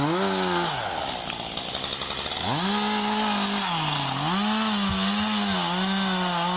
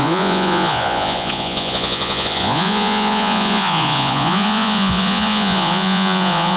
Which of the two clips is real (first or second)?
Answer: first